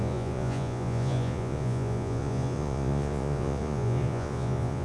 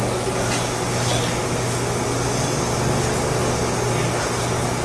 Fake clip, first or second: first